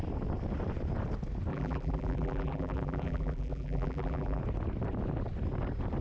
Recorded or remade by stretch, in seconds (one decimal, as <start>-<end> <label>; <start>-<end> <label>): 0.0-1.5 recorded; 1.5-4.4 remade; 4.4-6.0 recorded